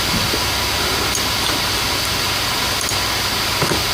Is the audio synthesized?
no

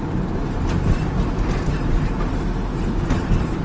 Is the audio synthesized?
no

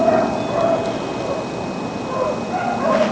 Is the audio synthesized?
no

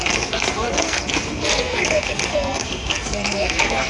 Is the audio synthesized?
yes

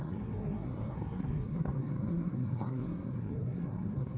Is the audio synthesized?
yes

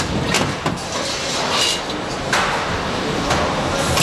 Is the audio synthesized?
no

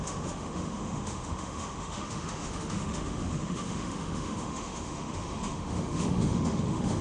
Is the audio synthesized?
yes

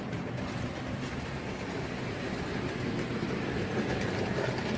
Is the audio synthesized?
no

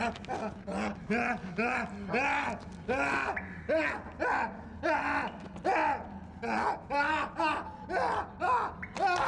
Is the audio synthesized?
no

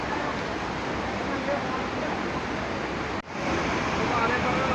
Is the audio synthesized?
no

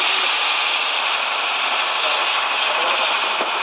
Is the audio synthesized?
no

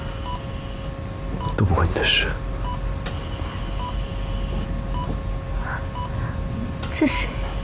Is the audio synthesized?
no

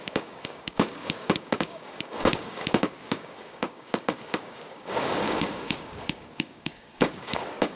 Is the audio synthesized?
yes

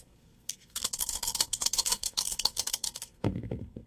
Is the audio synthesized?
yes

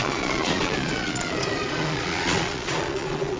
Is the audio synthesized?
yes